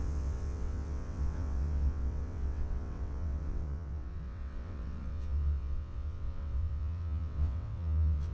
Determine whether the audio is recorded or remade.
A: remade